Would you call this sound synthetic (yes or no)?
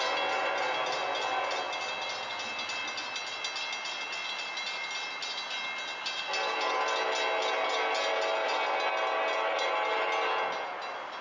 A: no